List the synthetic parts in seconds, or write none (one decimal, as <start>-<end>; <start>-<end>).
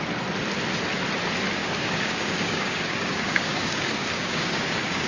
1.6-5.1